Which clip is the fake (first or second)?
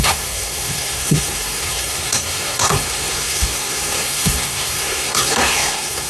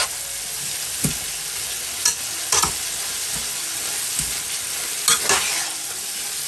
first